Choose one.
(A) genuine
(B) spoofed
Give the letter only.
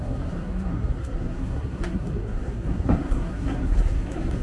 B